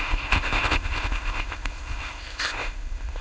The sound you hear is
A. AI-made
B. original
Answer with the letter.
A